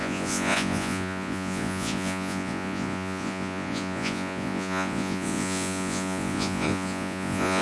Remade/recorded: remade